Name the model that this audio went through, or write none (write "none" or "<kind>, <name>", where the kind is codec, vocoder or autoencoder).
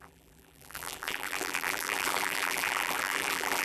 vocoder, BigVGAN v2